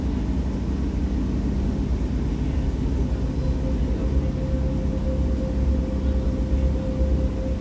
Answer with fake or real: real